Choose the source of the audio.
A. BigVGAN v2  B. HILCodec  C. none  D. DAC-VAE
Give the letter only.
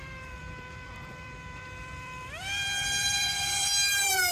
A